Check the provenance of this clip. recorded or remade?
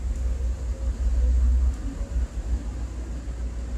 recorded